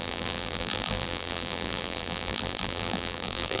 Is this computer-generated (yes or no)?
yes